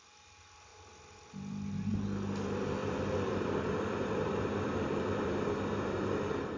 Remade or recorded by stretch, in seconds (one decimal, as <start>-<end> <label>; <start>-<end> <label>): 0.0-0.7 recorded; 0.7-1.7 remade; 1.7-2.8 recorded; 2.8-5.5 remade; 5.5-6.6 recorded